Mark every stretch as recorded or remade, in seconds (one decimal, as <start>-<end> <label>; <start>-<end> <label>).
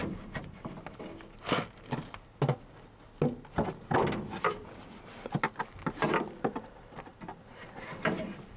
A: 0.0-0.6 remade; 0.6-6.5 recorded; 6.5-8.6 remade